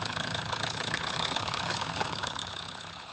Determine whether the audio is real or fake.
fake